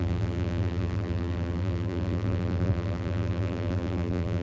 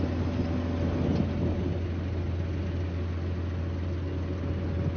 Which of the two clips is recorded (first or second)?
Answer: second